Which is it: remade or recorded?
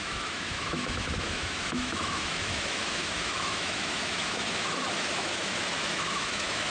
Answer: remade